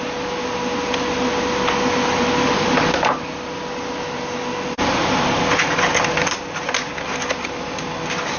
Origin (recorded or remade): recorded